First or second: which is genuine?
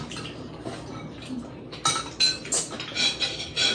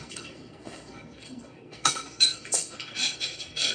first